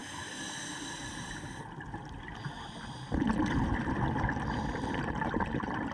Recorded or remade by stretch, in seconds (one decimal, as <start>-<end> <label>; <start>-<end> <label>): 0.0-3.5 recorded; 3.5-5.9 remade